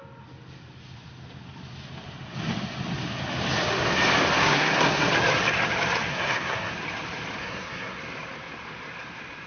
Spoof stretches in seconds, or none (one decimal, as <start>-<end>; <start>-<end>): 4.4-5.1; 6.1-6.7; 7.4-8.0